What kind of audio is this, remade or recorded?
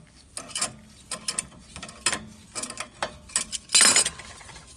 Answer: recorded